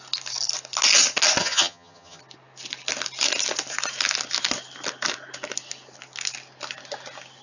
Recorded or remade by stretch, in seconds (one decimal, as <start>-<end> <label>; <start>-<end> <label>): 0.0-1.4 recorded; 1.4-2.2 remade; 2.2-7.4 recorded